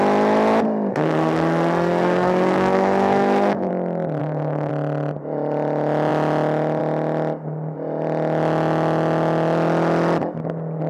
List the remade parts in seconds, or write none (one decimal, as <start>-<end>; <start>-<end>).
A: 0.9-3.7; 4.2-4.7